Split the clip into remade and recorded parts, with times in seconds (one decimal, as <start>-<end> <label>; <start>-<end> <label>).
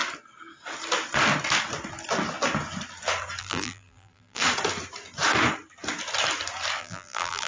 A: 0.0-3.4 recorded; 3.4-4.4 remade; 4.4-6.8 recorded; 6.8-7.5 remade